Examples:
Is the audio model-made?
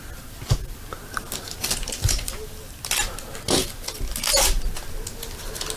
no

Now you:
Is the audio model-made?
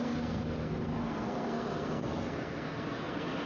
yes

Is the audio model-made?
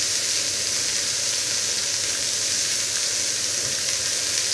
no